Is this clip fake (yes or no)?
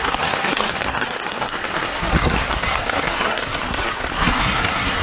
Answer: yes